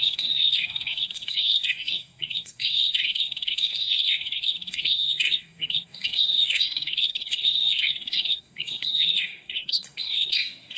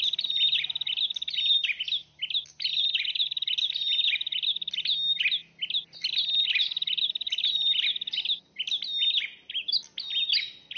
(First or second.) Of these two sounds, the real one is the second